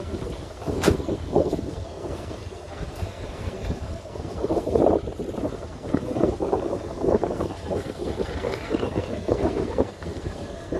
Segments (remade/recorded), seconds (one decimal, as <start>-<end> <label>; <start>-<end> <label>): 0.0-4.8 remade; 4.8-5.4 recorded; 5.4-10.8 remade